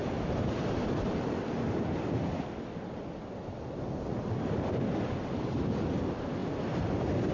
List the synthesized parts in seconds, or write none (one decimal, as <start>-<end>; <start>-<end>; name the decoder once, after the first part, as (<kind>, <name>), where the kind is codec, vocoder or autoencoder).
none